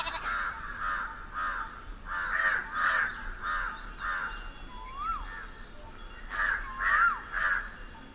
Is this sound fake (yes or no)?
no